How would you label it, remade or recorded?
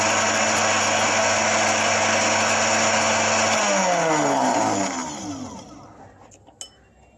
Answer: recorded